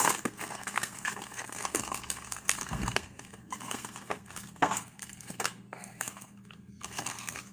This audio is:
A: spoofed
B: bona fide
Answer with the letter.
A